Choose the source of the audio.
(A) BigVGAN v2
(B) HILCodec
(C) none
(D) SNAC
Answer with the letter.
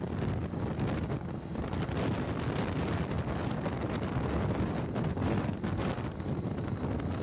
C